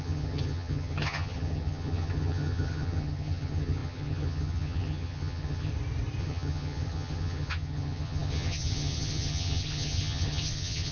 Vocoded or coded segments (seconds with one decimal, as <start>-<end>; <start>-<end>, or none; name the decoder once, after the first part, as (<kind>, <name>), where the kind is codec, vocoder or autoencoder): 0.0-5.7 (vocoder, HiFi-GAN); 6.2-10.9